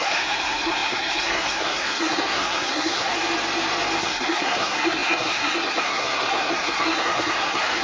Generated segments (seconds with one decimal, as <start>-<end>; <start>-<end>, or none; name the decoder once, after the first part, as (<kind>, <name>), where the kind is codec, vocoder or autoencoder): 0.0-3.1 (codec, SNAC); 4.0-7.8